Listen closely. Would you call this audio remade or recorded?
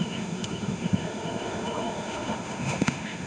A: remade